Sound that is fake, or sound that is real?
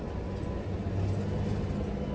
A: real